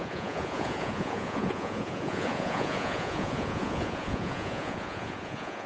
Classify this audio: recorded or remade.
remade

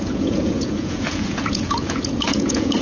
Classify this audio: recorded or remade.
remade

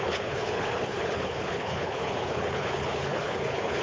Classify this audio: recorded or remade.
remade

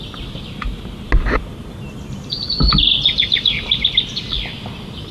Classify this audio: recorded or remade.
recorded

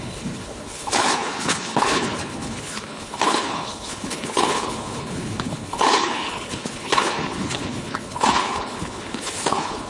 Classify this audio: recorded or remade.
remade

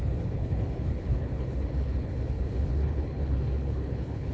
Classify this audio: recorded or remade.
remade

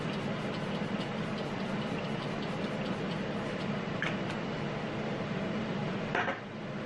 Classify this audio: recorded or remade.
recorded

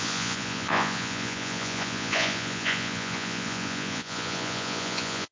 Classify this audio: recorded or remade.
remade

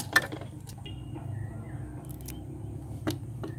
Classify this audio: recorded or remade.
recorded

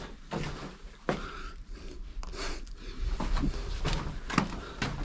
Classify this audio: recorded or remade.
recorded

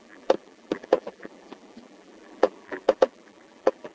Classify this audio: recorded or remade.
remade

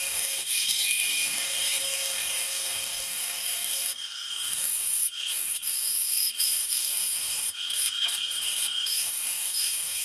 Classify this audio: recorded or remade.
remade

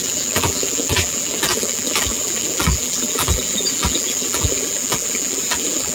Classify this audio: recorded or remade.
remade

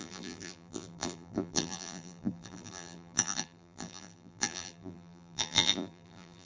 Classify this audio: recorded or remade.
remade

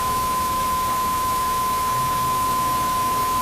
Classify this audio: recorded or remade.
remade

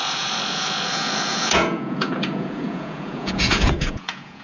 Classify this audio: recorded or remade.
remade